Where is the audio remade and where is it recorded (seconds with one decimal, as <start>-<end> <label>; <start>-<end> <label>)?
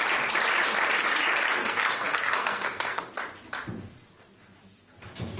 0.0-1.6 recorded; 1.6-3.0 remade; 3.0-5.4 recorded